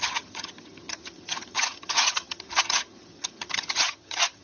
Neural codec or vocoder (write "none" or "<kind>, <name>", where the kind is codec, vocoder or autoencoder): vocoder, HiFi-GAN